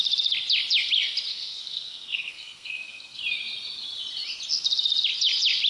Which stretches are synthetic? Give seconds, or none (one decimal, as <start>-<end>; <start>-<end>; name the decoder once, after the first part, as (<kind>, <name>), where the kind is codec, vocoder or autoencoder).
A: 1.3-3.2 (codec, SNAC)